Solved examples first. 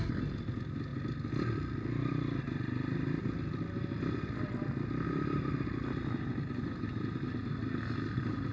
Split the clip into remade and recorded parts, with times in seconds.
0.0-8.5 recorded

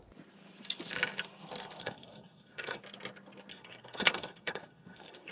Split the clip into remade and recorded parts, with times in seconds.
0.0-1.8 recorded; 1.8-2.8 remade; 2.8-3.5 recorded; 3.5-5.3 remade

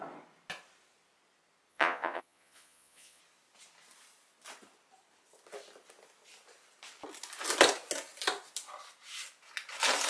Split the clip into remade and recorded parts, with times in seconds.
0.0-1.7 recorded; 1.7-3.2 remade; 3.2-10.1 recorded

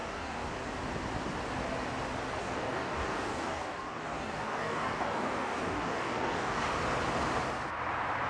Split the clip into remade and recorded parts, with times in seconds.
0.0-0.5 remade; 0.5-2.4 recorded; 2.4-6.7 remade; 6.7-8.3 recorded